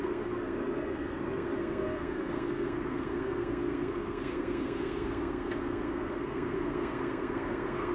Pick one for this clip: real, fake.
fake